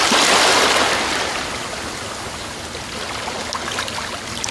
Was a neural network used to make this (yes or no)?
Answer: no